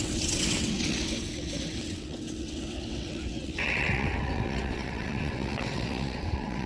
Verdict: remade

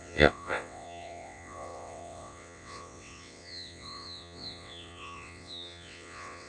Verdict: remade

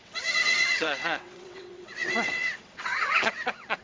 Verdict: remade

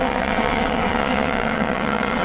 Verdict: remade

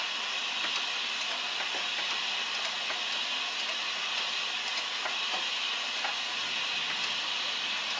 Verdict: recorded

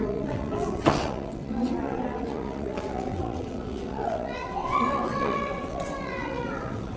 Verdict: remade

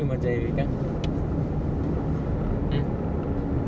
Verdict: recorded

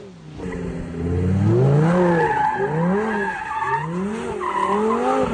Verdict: recorded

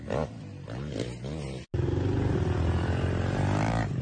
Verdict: recorded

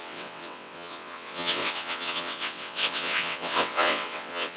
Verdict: remade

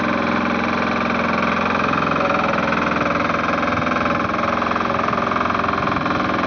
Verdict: recorded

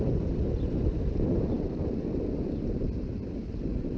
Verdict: recorded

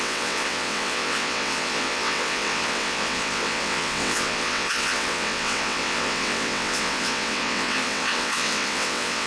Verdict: remade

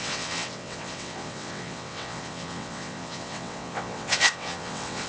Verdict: remade